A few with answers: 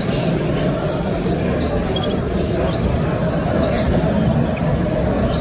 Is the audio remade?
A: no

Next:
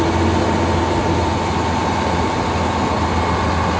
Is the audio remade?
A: no